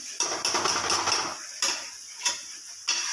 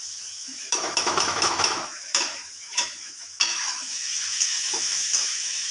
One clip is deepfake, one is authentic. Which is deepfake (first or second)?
second